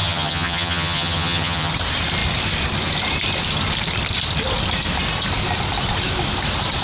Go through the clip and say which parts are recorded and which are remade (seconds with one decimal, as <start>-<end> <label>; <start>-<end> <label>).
0.0-1.7 remade; 1.7-6.8 recorded